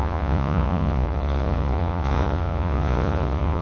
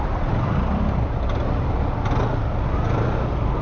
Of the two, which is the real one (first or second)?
second